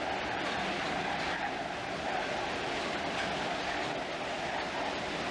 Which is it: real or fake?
real